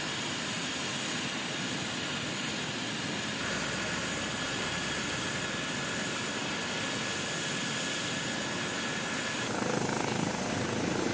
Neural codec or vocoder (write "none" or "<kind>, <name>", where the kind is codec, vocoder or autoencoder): none